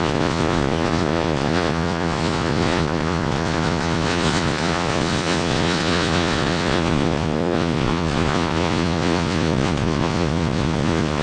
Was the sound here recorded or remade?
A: remade